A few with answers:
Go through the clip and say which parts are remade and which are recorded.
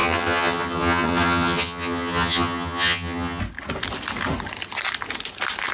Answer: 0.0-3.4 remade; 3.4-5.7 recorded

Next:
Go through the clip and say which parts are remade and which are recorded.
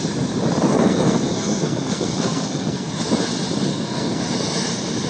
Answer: 0.0-0.7 recorded; 0.7-2.9 remade; 2.9-3.7 recorded; 3.7-4.2 remade; 4.2-5.1 recorded